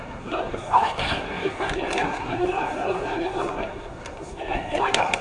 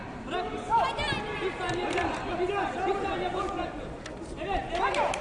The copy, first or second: first